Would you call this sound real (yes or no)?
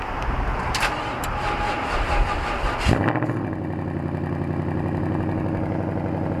yes